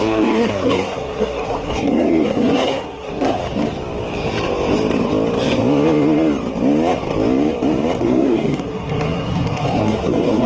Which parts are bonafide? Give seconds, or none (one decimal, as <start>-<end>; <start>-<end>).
3.4-8.0